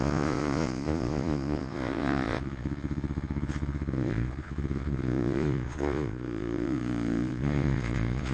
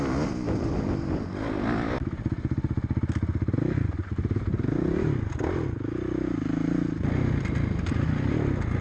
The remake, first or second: first